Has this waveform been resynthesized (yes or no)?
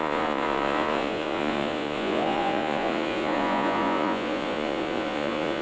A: yes